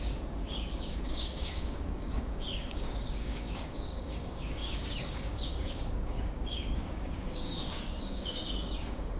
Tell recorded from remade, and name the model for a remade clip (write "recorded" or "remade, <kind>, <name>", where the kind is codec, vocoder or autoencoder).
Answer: remade, codec, DAC